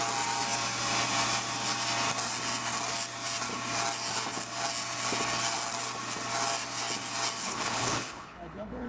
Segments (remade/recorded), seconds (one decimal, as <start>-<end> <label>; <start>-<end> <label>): 0.0-7.4 recorded; 7.4-8.9 remade